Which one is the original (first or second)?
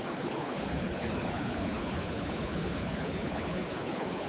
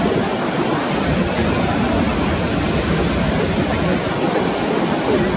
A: second